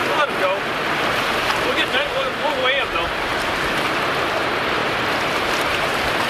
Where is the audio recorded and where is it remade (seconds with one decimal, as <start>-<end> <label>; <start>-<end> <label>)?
0.0-1.0 recorded; 1.0-2.6 remade; 2.6-3.1 recorded; 3.1-6.3 remade

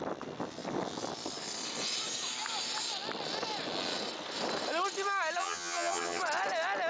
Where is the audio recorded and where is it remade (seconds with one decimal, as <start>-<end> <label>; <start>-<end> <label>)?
0.0-5.4 recorded; 5.4-6.2 remade; 6.2-6.9 recorded

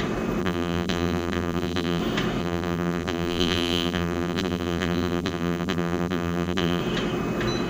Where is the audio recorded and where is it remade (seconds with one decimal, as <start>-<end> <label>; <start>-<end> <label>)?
0.0-0.4 recorded; 0.4-2.0 remade; 2.0-2.4 recorded; 2.4-6.8 remade; 6.8-7.7 recorded

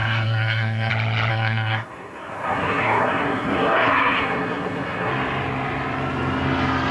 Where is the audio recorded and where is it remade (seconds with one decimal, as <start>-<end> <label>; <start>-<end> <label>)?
0.0-0.9 remade; 0.9-1.3 recorded; 1.3-5.1 remade; 5.1-6.9 recorded

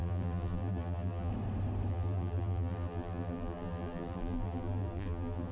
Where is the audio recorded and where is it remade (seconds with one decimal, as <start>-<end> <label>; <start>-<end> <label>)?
0.0-1.3 remade; 1.3-1.9 recorded; 1.9-5.5 remade

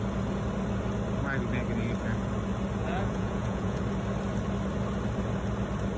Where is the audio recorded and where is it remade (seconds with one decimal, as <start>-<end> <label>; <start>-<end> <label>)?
0.0-2.8 recorded; 2.8-3.8 remade; 3.8-6.0 recorded